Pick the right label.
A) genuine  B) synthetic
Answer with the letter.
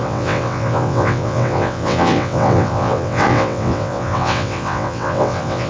B